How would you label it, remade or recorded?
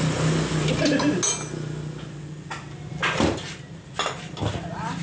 recorded